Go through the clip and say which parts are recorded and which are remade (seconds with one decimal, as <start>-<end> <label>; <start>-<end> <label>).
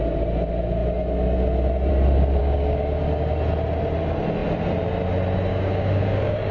0.0-2.4 recorded; 2.4-3.0 remade; 3.0-5.5 recorded; 5.5-6.5 remade